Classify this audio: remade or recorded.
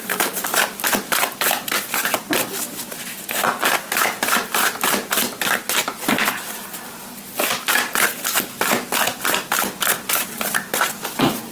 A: recorded